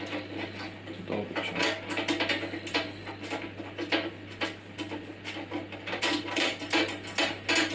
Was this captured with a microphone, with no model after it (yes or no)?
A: yes